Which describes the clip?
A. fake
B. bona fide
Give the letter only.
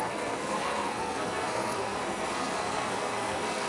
A